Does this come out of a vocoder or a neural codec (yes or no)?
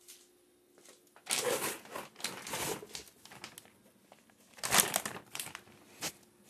no